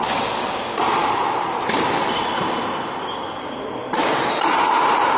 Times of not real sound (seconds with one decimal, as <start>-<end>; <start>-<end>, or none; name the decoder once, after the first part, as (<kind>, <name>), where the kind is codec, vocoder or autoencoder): none